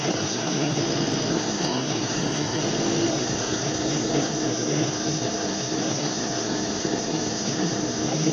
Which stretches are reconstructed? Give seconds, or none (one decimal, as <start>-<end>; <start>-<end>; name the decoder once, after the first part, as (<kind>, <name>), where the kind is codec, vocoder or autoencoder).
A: 0.0-0.8 (codec, SNAC); 1.3-2.6; 3.1-8.3